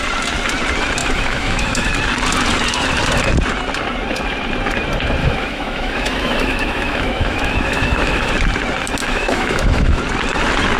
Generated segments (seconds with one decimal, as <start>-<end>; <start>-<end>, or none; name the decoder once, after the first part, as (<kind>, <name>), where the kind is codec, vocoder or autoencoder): 1.0-1.9 (autoencoder, DAC-VAE); 5.2-8.3; 9.0-10.0